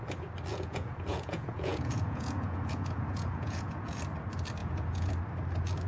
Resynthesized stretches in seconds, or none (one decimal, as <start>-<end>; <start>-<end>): 0.5-4.0; 4.6-5.1